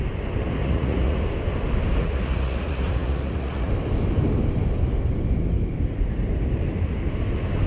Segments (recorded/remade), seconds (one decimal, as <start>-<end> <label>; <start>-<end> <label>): 0.0-0.6 recorded; 0.6-1.2 remade; 1.2-2.0 recorded; 2.0-3.7 remade; 3.7-7.7 recorded